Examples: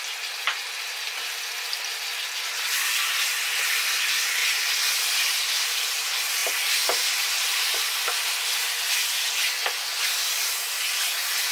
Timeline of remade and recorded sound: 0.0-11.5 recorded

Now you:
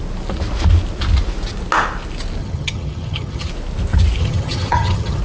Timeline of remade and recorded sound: 0.0-2.4 recorded; 2.4-3.5 remade; 3.5-4.2 recorded; 4.2-5.2 remade

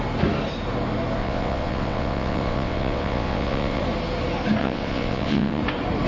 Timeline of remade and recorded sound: 0.0-1.2 recorded; 1.2-3.8 remade; 3.8-4.6 recorded; 4.6-5.6 remade; 5.6-6.1 recorded